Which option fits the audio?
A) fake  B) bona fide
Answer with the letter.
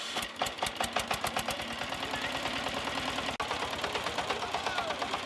B